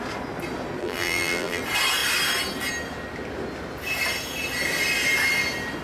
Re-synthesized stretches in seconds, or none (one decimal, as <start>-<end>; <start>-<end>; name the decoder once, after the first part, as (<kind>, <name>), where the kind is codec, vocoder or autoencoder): 0.8-1.6 (vocoder, BigVGAN v2)